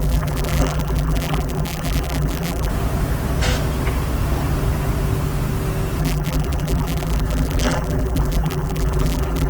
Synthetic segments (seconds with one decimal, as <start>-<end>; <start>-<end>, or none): 0.0-2.7; 6.0-9.5